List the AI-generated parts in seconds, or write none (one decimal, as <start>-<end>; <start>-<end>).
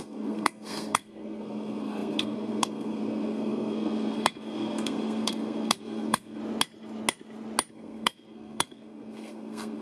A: 0.0-6.4; 7.7-9.8